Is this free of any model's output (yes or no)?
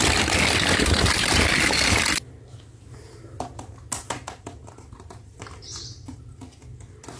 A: yes